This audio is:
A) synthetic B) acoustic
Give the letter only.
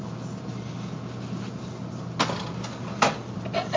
B